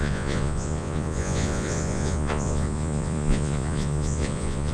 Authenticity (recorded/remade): remade